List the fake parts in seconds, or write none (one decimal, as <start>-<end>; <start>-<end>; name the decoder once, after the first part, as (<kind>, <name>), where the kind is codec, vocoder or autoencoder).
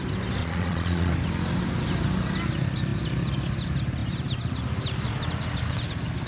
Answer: 0.4-1.1 (vocoder, Vocos)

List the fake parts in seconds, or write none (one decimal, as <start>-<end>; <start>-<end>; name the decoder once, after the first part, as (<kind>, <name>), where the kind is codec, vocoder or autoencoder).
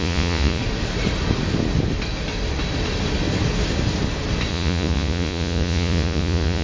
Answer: 0.0-0.6 (vocoder, Vocos); 4.5-6.6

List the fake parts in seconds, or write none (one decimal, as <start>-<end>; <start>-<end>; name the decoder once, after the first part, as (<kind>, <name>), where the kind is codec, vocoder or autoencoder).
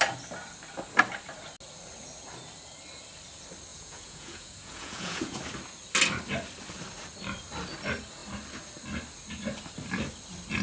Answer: 3.7-5.4 (vocoder, Vocos)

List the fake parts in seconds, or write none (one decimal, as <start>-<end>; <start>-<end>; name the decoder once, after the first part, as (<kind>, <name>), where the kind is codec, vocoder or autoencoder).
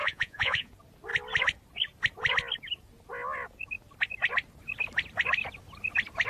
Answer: 0.0-0.7 (vocoder, Vocos)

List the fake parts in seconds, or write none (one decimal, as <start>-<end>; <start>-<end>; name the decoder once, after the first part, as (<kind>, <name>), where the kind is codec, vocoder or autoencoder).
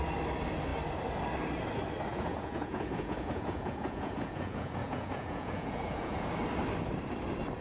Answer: 2.1-6.3 (vocoder, Vocos)